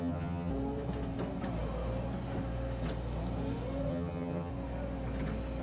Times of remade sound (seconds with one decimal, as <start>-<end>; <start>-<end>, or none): 0.0-0.5; 3.9-4.5

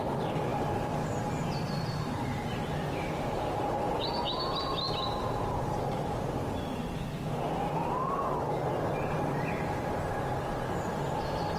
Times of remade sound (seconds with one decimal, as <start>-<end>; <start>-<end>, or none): none

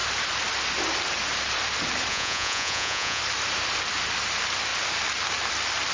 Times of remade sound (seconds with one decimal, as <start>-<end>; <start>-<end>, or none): 2.1-3.2

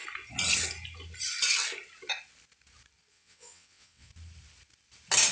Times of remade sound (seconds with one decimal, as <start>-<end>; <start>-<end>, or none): 3.1-4.1